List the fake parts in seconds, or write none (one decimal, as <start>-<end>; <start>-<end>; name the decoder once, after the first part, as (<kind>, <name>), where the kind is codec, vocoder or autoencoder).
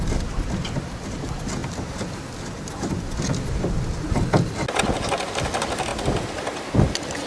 none